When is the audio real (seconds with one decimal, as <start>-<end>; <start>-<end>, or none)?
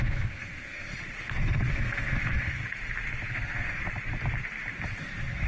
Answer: 0.9-1.7; 2.6-3.3; 3.8-5.0